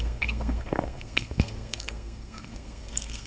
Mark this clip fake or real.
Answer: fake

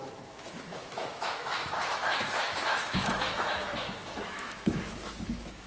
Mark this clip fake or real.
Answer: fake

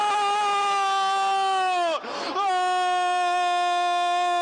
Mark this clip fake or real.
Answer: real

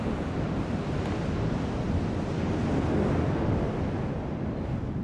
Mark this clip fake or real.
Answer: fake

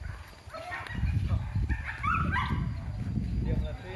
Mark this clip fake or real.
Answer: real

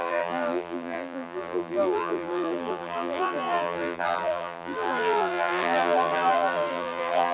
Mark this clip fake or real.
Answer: fake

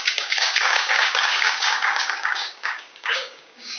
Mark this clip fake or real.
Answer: fake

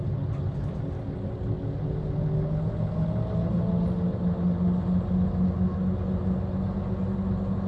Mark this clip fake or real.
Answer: real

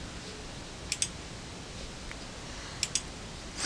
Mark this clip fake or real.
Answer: real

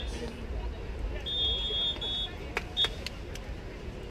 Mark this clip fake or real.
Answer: real